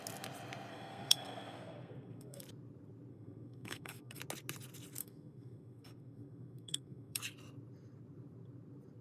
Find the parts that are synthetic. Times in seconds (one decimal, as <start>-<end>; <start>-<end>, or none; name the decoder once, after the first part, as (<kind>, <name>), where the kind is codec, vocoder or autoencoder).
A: 0.7-2.4 (codec, SNAC); 3.1-4.2; 5.0-7.2